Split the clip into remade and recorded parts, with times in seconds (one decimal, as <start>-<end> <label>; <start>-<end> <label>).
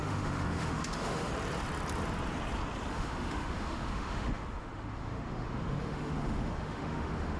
0.0-1.3 remade; 1.3-2.9 recorded; 2.9-7.4 remade